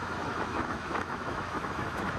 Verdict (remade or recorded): remade